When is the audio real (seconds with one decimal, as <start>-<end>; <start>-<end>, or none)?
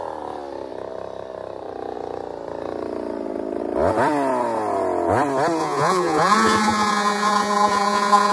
0.0-5.6